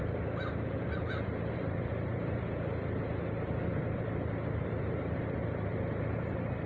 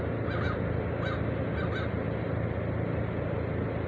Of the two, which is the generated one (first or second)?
first